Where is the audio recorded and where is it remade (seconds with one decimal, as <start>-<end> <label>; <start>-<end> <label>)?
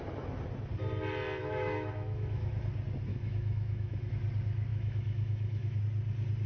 0.0-1.4 recorded; 1.4-2.5 remade; 2.5-3.1 recorded; 3.1-4.1 remade; 4.1-4.7 recorded; 4.7-5.8 remade; 5.8-6.5 recorded